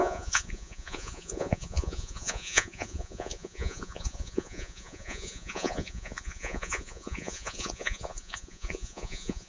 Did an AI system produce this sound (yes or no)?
yes